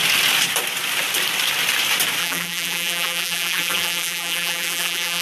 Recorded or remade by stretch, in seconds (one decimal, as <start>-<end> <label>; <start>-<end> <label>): 0.0-2.2 recorded; 2.2-5.2 remade